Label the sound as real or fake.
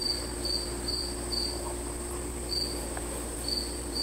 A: real